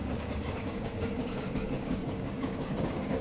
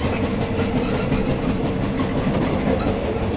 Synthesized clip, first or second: first